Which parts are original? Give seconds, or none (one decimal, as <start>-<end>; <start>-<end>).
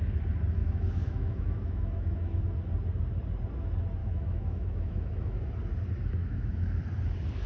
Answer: 0.0-0.6; 2.4-4.0; 5.4-6.2; 6.8-7.5